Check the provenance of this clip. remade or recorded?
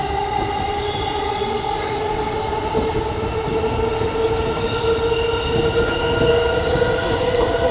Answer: recorded